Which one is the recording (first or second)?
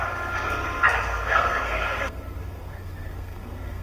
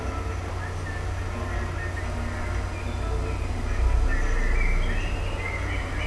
second